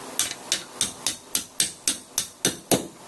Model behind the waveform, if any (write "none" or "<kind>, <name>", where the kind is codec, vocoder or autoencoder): none